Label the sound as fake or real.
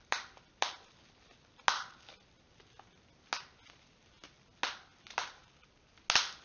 real